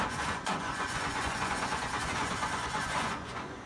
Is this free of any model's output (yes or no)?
no